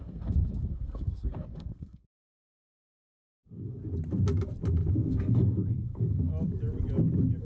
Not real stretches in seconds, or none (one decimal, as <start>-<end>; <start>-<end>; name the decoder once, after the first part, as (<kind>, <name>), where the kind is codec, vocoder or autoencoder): 0.0-3.8 (codec, SNAC); 4.9-6.3